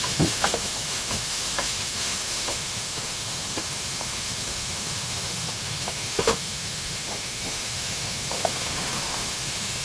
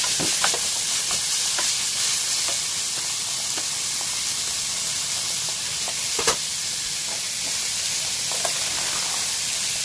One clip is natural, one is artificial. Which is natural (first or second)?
second